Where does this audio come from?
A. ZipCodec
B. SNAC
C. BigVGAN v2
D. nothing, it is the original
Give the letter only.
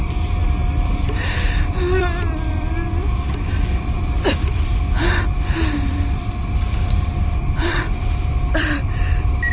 C